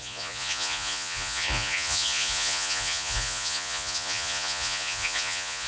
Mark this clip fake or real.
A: fake